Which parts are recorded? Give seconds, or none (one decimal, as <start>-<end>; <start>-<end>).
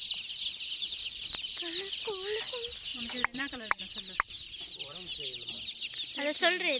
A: 0.0-2.9; 3.8-6.8